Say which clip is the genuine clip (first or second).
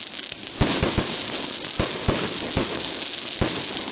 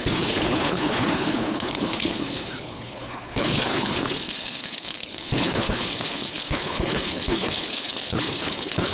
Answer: first